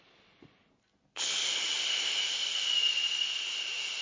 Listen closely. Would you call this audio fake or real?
real